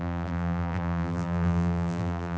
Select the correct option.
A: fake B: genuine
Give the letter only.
A